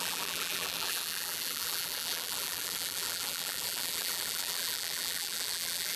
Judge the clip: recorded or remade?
remade